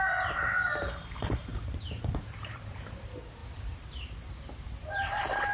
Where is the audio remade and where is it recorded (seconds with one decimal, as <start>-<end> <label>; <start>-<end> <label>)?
0.0-1.5 recorded; 1.5-2.8 remade; 2.8-3.4 recorded; 3.4-5.1 remade; 5.1-5.5 recorded